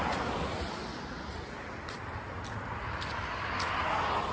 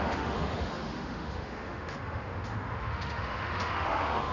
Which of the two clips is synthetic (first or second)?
second